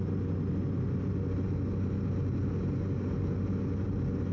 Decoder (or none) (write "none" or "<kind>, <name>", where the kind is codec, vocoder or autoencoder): none